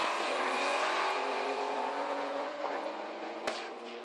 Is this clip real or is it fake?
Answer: fake